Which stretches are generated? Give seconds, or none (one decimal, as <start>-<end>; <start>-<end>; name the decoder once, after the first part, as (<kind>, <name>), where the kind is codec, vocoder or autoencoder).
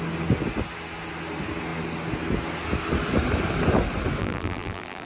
4.2-5.1 (vocoder, BigVGAN v2)